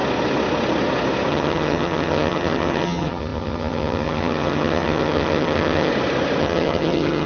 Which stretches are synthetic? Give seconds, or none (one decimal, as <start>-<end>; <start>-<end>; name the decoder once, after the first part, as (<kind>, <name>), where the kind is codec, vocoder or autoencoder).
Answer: 1.3-5.9 (vocoder, HiFi-GAN); 6.4-7.3